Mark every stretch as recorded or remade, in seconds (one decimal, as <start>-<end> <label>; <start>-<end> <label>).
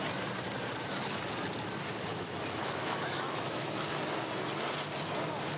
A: 0.0-2.1 recorded; 2.1-3.8 remade; 3.8-5.6 recorded